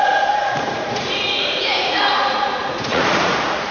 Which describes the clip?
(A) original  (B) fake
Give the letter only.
B